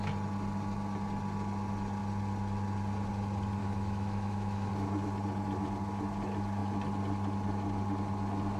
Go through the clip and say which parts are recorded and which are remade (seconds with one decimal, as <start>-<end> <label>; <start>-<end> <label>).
0.0-3.6 recorded; 3.6-4.7 remade; 4.7-8.6 recorded